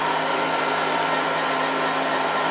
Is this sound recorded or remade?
recorded